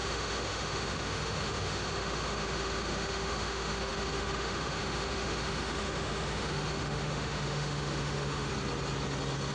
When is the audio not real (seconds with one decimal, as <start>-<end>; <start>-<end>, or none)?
0.0-8.5